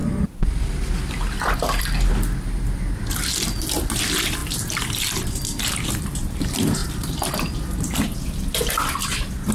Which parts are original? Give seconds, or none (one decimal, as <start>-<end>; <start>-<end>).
0.0-4.4; 5.7-9.5